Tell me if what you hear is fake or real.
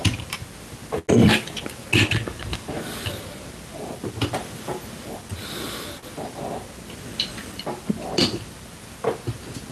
real